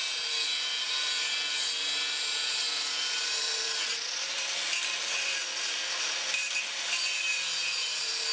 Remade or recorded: remade